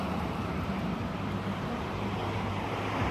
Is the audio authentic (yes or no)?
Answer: no